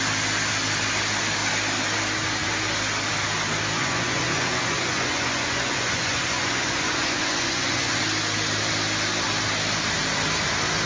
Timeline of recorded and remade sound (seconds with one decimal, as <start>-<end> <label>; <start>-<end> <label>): 0.0-3.8 recorded; 3.8-8.0 remade; 8.0-10.9 recorded